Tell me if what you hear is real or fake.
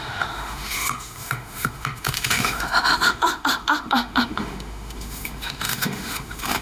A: fake